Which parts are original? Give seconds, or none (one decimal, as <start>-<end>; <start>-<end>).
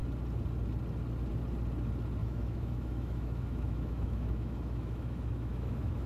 0.0-2.2